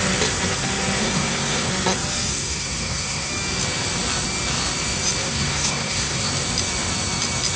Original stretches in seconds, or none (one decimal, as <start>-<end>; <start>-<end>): 0.0-1.0; 1.7-2.3; 3.3-5.2; 6.3-7.6